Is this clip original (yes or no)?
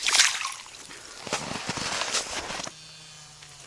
yes